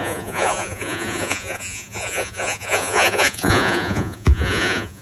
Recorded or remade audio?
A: remade